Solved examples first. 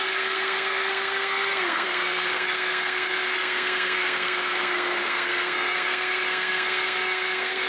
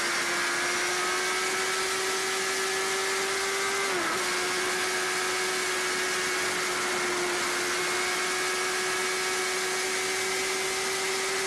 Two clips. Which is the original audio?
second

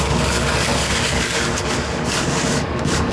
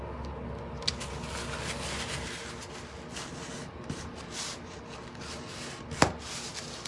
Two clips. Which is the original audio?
second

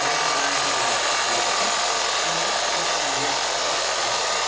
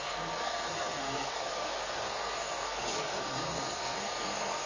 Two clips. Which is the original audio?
first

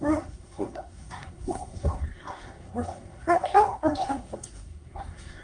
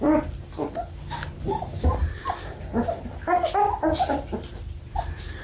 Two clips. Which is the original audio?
second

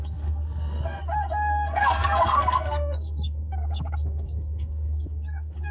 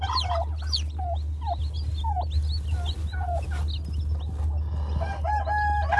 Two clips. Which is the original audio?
second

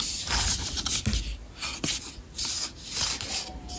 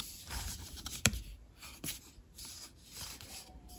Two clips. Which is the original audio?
first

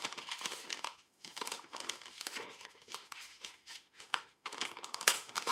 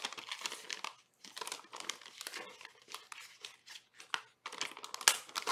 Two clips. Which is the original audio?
second